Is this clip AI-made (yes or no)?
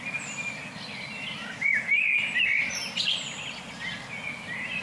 no